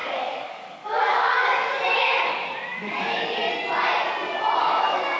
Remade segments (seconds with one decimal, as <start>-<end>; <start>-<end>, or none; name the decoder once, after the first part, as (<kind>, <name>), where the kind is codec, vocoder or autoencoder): 0.0-3.4 (codec, DAC); 4.6-5.2